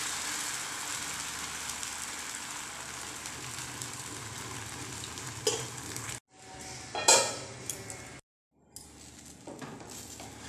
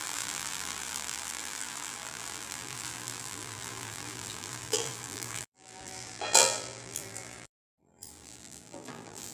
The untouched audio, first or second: first